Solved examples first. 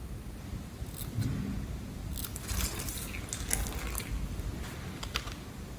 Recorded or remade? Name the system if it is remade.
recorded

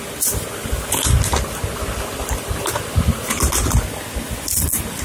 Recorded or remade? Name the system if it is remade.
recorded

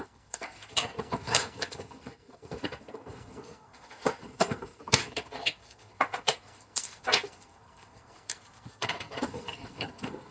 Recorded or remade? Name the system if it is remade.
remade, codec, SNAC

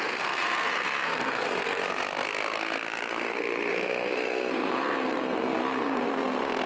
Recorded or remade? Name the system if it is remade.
remade, codec, SNAC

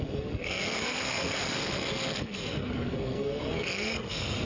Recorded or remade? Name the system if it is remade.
remade, codec, SNAC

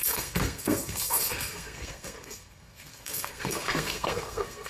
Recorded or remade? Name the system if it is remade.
remade, codec, SNAC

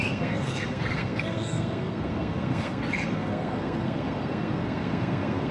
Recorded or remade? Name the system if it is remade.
remade, codec, SNAC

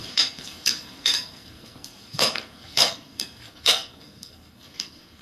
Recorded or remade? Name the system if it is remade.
remade, codec, SNAC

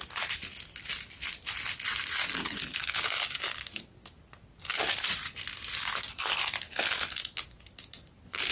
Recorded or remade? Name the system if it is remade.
recorded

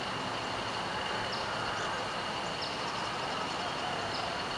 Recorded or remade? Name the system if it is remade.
recorded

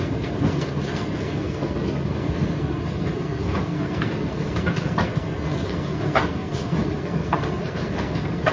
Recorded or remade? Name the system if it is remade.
remade, codec, SNAC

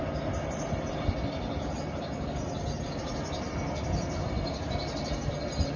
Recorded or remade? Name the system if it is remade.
recorded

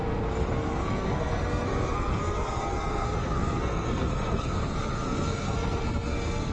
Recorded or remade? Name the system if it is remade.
remade, codec, SNAC